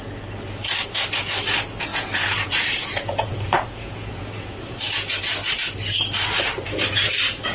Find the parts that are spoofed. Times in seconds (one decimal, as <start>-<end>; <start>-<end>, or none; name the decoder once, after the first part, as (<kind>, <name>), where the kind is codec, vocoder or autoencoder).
1.9-5.2 (vocoder, Vocos)